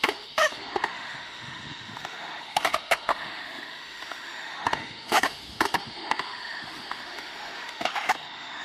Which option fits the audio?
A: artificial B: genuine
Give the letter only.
A